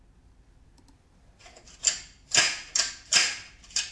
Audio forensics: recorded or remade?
recorded